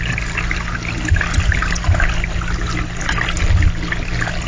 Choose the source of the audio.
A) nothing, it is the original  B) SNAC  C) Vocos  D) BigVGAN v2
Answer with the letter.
A